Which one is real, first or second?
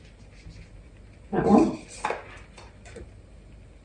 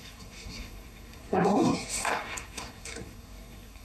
first